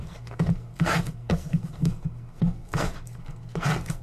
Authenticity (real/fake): fake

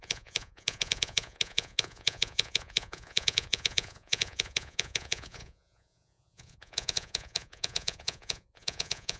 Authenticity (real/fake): fake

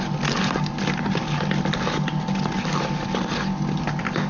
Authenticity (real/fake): real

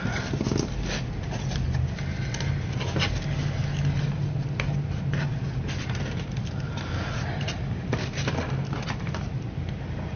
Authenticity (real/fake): real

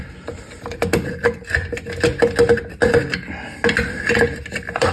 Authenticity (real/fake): real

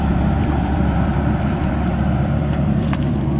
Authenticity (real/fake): fake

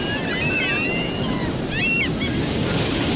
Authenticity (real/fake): real